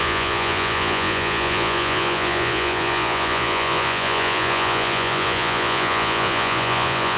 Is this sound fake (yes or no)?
yes